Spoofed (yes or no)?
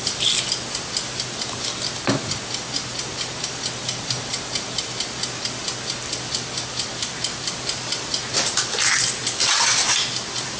no